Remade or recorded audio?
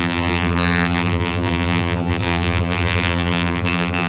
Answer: remade